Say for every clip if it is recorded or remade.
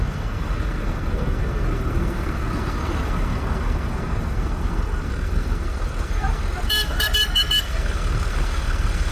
remade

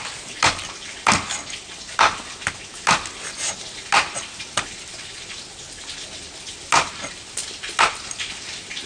recorded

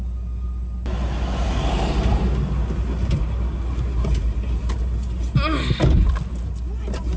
recorded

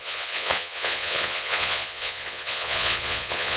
remade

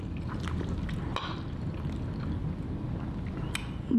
recorded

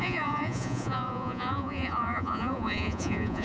remade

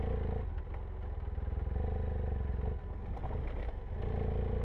recorded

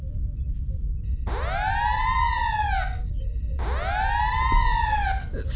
recorded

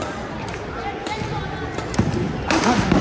recorded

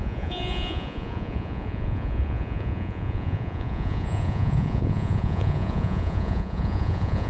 remade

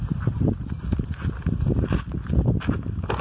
recorded